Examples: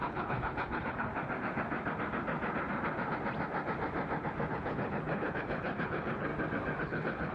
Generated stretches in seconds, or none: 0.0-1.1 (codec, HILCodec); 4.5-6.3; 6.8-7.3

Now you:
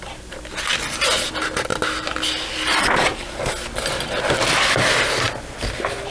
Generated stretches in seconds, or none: 1.7-3.2 (vocoder, BigVGAN v2)

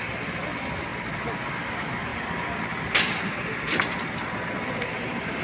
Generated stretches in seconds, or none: 0.0-0.9 (vocoder, BigVGAN v2); 1.7-5.4

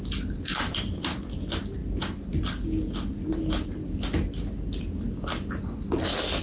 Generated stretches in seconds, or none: none

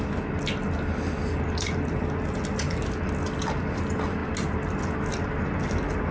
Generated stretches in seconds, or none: none

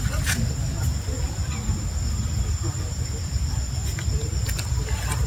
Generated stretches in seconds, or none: none